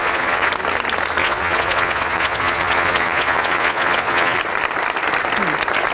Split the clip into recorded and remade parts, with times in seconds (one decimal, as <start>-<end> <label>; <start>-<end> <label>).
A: 0.0-0.5 remade; 0.5-1.2 recorded; 1.2-4.4 remade; 4.4-5.9 recorded